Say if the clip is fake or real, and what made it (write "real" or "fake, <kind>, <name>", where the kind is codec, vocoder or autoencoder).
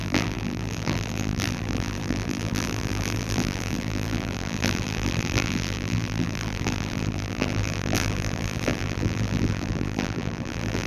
fake, vocoder, BigVGAN v2